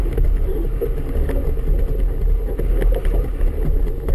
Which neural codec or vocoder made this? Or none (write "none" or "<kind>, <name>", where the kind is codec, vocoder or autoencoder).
none